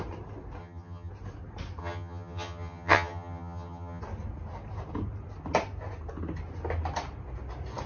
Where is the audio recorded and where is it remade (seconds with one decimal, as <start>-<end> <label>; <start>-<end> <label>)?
0.0-0.6 recorded; 0.6-1.1 remade; 1.1-1.8 recorded; 1.8-4.0 remade; 4.0-7.9 recorded